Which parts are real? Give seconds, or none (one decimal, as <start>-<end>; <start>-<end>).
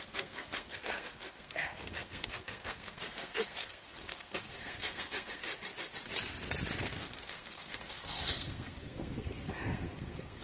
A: 5.4-6.8